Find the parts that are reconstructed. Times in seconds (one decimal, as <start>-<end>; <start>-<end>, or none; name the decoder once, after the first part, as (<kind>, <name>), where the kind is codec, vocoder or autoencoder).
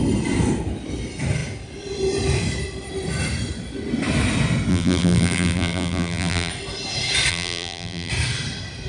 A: 4.7-6.5 (vocoder, BigVGAN v2); 7.3-8.1